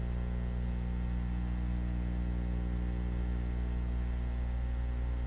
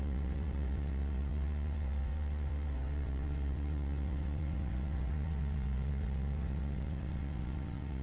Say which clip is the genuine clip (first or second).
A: first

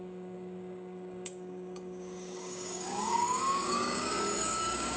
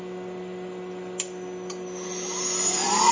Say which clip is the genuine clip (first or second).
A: second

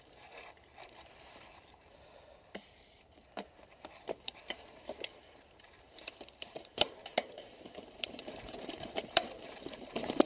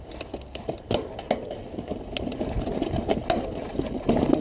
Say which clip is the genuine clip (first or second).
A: second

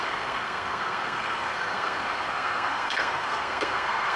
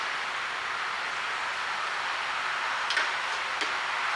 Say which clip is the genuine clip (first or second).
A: second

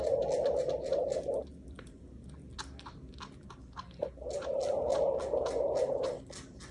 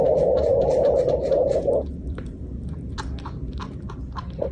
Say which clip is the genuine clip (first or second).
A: first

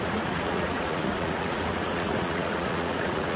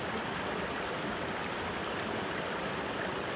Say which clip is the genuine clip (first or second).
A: second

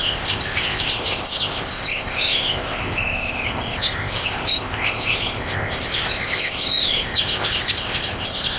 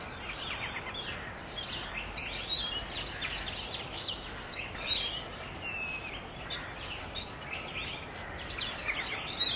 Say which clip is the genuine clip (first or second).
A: second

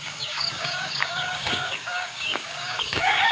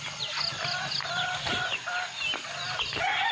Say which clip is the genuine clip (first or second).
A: second